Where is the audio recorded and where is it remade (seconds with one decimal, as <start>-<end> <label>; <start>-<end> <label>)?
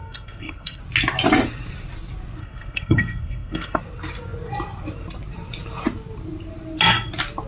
0.0-0.8 remade; 0.8-2.4 recorded; 2.4-3.8 remade; 3.8-7.5 recorded